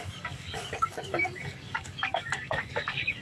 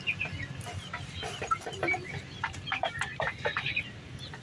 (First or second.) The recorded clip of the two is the second